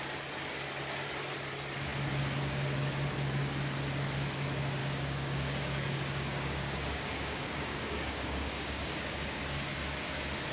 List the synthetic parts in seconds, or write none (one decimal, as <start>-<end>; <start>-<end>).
4.8-9.4